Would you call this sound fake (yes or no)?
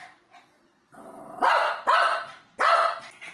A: no